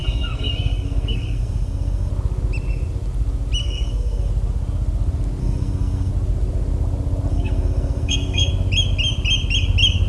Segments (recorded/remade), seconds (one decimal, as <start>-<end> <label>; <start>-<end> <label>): 0.0-2.1 remade; 2.1-3.6 recorded; 3.6-4.3 remade; 4.3-5.4 recorded; 5.4-6.1 remade; 6.1-7.3 recorded; 7.3-8.5 remade; 8.5-10.1 recorded